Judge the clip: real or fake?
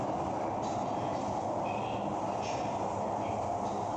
real